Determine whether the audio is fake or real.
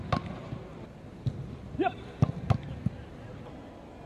real